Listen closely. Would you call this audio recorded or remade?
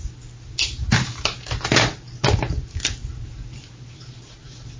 recorded